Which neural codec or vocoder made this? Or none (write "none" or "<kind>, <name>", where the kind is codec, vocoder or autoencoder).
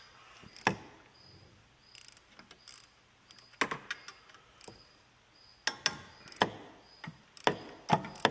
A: none